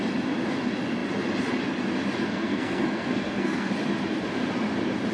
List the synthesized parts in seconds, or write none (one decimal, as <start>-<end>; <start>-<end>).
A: 2.2-3.7